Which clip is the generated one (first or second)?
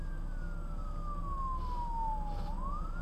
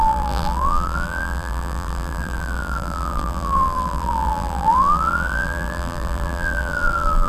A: second